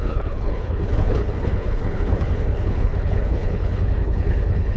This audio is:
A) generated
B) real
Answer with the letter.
A